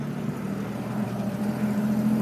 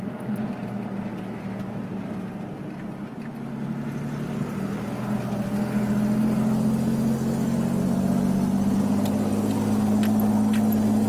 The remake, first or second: first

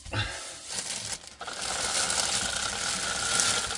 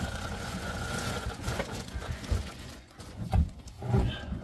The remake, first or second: second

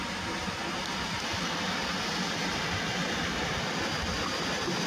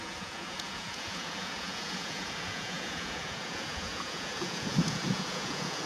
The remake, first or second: second